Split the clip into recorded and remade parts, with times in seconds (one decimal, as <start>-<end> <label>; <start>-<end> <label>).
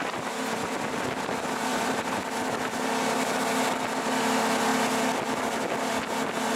0.0-1.7 recorded; 1.7-2.2 remade; 2.2-6.6 recorded